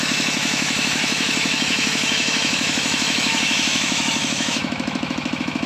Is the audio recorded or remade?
remade